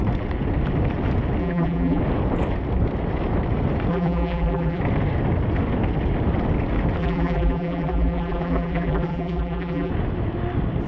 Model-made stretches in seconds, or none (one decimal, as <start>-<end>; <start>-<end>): 1.4-2.0; 3.9-4.8; 7.0-9.9